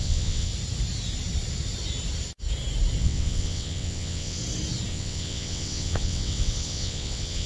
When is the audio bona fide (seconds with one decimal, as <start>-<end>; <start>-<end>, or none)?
0.5-3.0; 4.4-4.9